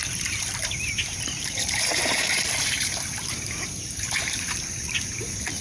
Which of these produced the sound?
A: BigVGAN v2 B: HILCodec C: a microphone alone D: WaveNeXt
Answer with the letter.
A